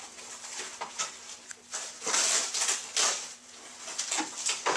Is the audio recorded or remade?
recorded